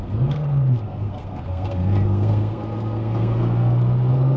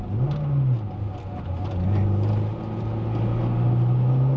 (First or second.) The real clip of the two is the second